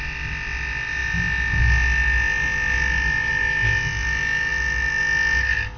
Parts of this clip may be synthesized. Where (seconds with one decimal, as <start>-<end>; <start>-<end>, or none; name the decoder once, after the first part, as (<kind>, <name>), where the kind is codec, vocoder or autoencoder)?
4.5-5.0 (vocoder, BigVGAN v2)